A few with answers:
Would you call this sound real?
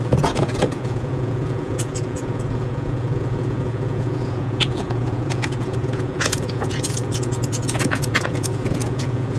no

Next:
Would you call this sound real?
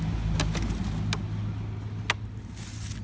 yes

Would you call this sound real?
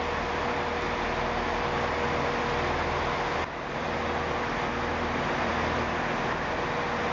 yes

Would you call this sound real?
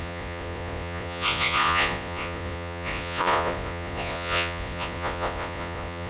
no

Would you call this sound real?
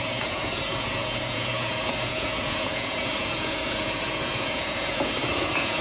no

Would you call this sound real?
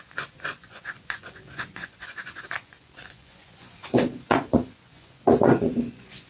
no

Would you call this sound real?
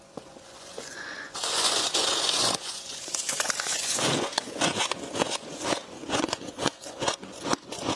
no